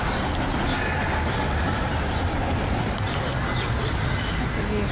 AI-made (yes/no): no